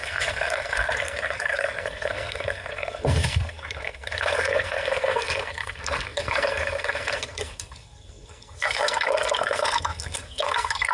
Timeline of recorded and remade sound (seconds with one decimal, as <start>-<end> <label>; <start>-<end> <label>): 0.0-10.9 remade